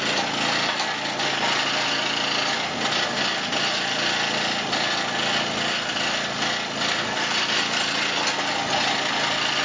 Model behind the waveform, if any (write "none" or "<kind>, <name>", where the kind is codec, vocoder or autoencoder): none